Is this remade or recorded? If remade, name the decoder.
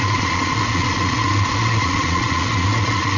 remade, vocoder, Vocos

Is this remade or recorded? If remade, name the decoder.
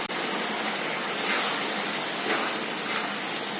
recorded